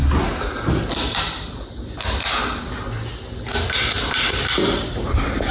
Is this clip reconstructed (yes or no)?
no